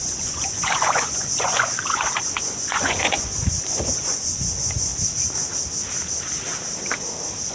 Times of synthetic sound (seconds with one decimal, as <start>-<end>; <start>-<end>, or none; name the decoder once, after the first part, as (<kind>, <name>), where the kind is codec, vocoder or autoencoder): 0.0-4.9 (vocoder, Vocos)